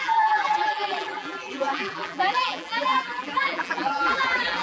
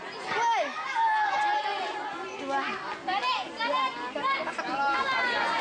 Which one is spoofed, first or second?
first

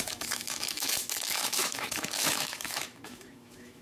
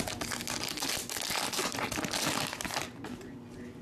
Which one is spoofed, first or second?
first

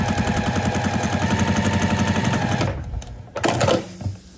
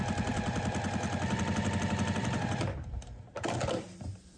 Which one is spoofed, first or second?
second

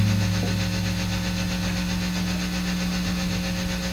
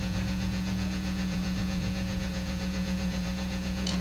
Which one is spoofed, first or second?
second